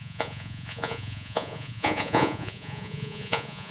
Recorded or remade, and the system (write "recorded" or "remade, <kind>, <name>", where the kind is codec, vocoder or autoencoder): remade, vocoder, Vocos